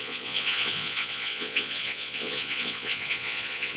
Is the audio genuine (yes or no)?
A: no